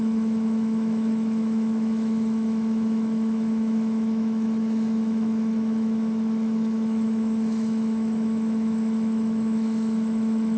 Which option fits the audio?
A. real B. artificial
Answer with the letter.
B